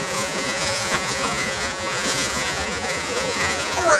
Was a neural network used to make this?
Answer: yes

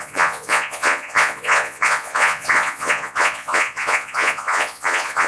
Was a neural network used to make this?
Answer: yes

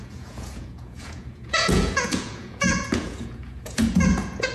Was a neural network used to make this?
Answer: yes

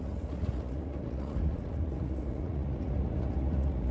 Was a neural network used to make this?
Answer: yes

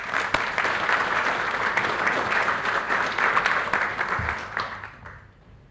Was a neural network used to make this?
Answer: no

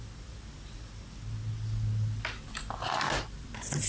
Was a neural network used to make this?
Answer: no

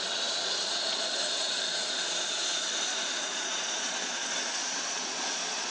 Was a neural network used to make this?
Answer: yes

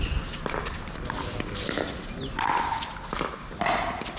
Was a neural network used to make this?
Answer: no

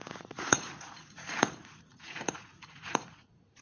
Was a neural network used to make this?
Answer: yes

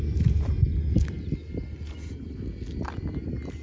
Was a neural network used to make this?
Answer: no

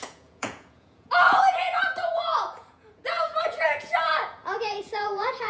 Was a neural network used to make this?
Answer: yes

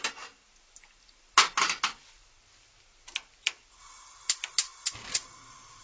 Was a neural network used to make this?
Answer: no